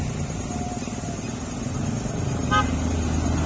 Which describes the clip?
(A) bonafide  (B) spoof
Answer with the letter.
A